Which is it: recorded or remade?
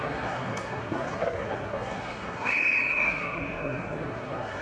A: remade